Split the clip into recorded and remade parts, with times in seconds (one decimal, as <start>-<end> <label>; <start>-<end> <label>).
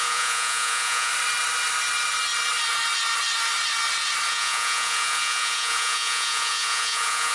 0.0-1.1 remade; 1.1-4.3 recorded; 4.3-7.3 remade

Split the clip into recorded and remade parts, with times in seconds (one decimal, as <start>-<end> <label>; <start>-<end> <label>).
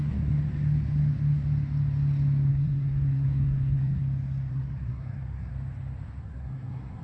0.0-0.4 remade; 0.4-2.5 recorded; 2.5-4.0 remade; 4.0-4.5 recorded; 4.5-5.5 remade; 5.5-6.2 recorded; 6.2-7.0 remade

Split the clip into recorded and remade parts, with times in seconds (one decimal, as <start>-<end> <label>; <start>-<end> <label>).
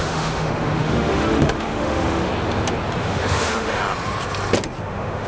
0.0-2.3 remade; 2.3-3.0 recorded; 3.0-3.8 remade; 3.8-4.8 recorded; 4.8-5.3 remade